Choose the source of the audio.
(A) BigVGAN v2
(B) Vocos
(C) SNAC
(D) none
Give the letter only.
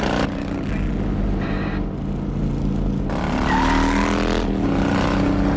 D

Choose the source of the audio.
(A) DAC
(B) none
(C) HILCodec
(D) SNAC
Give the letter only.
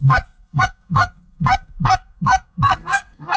D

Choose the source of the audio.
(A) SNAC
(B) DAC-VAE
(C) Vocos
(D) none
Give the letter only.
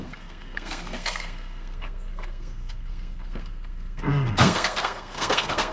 A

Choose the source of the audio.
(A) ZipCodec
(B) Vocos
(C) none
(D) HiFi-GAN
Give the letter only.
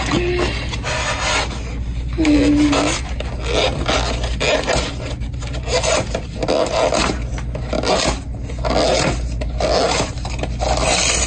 C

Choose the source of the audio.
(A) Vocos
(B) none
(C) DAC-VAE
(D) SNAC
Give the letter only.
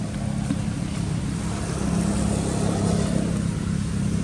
B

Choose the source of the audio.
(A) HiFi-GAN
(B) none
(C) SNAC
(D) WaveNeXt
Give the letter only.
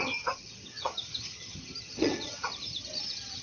A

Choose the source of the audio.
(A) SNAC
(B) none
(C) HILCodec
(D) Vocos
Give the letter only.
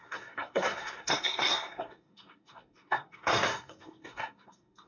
A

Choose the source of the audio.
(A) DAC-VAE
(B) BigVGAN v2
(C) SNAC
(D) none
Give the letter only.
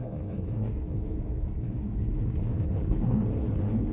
C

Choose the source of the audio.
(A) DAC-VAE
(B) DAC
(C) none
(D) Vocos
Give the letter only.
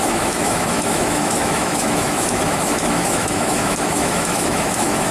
A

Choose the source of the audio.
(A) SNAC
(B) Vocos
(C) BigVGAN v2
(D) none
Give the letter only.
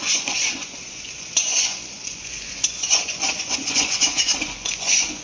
B